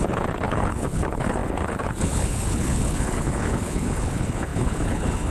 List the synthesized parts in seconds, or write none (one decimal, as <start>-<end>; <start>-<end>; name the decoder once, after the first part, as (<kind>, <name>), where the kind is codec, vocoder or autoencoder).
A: 0.0-5.3 (codec, HILCodec)